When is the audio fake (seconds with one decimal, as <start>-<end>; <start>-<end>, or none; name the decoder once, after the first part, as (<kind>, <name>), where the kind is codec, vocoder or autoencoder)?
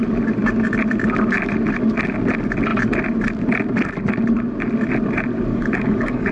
5.5-6.3 (codec, DAC)